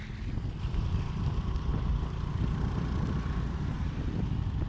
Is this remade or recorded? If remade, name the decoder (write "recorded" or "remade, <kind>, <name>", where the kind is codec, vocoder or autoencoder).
remade, vocoder, BigVGAN v2